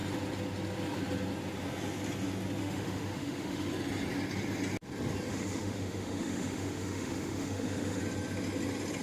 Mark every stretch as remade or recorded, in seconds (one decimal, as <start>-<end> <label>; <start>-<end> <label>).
0.0-2.6 recorded; 2.6-3.7 remade; 3.7-5.3 recorded; 5.3-8.0 remade; 8.0-9.0 recorded